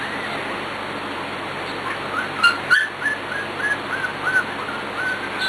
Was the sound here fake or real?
real